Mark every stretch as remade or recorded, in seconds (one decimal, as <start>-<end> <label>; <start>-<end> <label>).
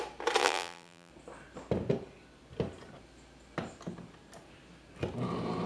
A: 0.0-0.4 recorded; 0.4-1.1 remade; 1.1-5.7 recorded